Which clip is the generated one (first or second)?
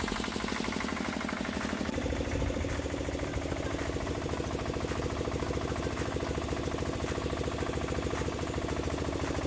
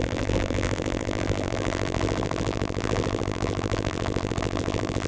second